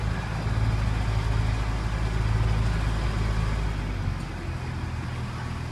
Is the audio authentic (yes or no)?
yes